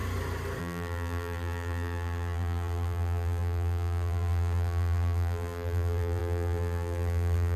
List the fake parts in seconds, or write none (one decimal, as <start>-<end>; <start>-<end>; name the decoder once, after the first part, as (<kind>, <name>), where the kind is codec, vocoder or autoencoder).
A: 0.6-7.6 (vocoder, BigVGAN v2)